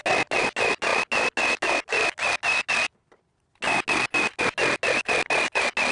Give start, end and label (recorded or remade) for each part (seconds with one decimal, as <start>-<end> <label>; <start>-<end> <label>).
0.0-5.9 recorded